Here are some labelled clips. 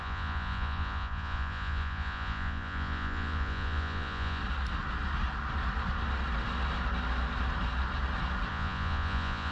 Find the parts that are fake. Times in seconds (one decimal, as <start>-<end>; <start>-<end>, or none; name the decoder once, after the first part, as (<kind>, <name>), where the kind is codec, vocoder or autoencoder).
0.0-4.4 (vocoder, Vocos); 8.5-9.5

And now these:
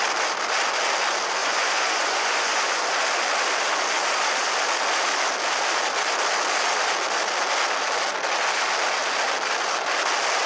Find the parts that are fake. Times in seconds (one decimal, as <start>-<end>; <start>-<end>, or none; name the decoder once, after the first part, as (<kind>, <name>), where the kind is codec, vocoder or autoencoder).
1.4-2.8 (vocoder, Vocos)

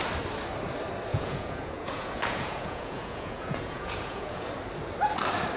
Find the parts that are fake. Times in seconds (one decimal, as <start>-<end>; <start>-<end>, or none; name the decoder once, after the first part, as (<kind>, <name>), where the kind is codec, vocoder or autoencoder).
1.1-4.5 (vocoder, Vocos)

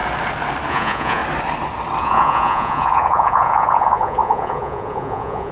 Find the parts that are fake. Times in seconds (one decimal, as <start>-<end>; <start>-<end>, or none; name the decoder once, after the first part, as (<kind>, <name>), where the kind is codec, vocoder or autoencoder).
0.7-1.2 (vocoder, Vocos); 2.0-5.5

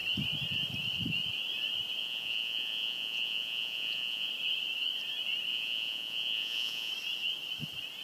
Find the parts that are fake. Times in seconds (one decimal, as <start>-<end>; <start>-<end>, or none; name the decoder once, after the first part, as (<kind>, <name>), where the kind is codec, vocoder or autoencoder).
2.0-4.3 (vocoder, Vocos); 5.5-6.9

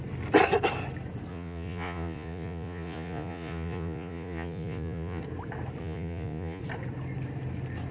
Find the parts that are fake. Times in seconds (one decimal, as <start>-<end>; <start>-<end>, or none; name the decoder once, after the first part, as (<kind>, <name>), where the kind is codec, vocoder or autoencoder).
1.3-5.2 (vocoder, Vocos); 5.8-6.6

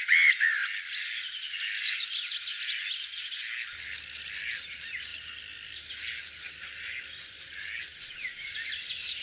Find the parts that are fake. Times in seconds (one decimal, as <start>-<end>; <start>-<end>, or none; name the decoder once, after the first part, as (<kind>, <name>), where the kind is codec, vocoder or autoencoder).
7.9-8.5 (vocoder, Vocos)